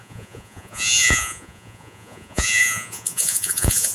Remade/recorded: remade